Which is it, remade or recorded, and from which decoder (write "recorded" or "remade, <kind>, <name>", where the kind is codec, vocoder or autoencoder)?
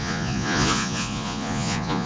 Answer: remade, vocoder, Vocos